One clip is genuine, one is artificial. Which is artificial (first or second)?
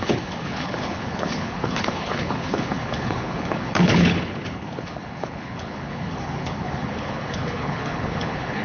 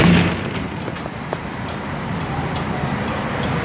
first